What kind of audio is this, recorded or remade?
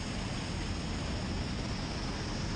recorded